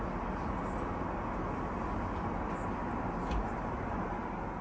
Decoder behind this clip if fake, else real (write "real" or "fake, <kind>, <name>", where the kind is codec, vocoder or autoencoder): real